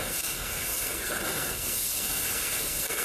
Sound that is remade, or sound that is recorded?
remade